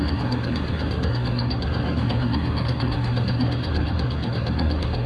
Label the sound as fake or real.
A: fake